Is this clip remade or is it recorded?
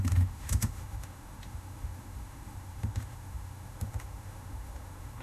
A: remade